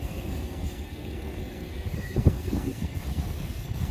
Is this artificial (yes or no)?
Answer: yes